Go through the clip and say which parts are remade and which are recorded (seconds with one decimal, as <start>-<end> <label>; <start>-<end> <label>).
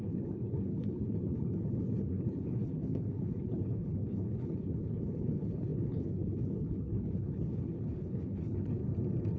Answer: 0.0-8.8 remade; 8.8-9.4 recorded